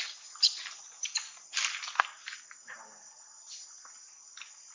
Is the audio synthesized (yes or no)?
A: no